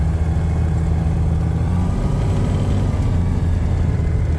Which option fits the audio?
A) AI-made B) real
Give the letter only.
B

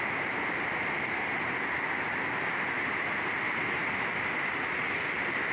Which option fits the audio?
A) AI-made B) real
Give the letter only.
B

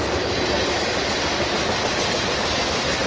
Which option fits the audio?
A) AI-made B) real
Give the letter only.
B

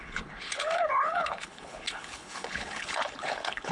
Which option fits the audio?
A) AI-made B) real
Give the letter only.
A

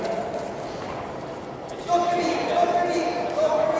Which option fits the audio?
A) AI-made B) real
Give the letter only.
B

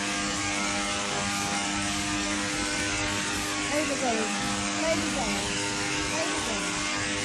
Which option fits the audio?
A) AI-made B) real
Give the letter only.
A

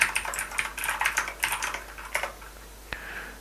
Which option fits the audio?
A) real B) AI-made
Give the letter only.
A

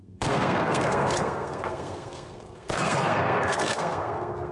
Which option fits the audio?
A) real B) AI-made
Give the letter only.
B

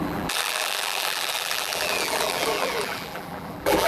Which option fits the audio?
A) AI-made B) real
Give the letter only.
A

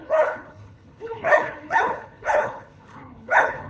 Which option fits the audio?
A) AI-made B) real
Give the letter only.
A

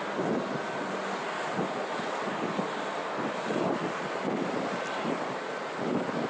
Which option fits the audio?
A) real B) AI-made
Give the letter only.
A